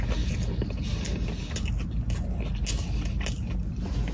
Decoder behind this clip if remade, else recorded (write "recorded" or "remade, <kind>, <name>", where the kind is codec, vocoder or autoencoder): recorded